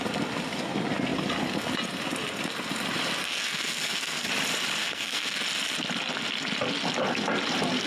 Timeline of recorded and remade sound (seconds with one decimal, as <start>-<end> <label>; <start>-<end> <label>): 0.0-3.2 recorded; 3.2-4.3 remade; 4.3-4.8 recorded; 4.8-5.4 remade; 5.4-7.9 recorded